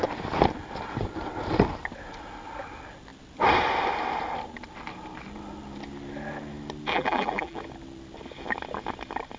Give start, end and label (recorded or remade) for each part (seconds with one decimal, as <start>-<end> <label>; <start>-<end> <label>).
0.0-6.9 recorded; 6.9-7.6 remade; 7.6-9.4 recorded